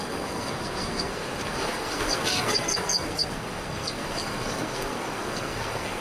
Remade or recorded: remade